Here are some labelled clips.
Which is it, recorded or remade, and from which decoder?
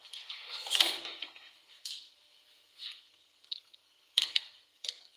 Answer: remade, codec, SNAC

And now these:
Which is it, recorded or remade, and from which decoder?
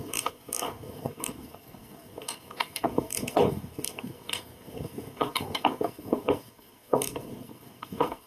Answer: remade, codec, SNAC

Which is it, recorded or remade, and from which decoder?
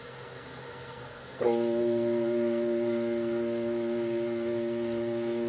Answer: remade, codec, SNAC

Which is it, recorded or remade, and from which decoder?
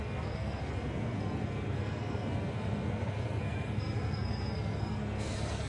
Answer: remade, codec, SNAC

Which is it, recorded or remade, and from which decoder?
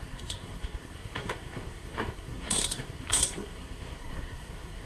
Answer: remade, codec, SNAC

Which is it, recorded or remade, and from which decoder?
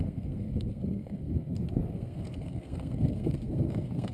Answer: remade, codec, SNAC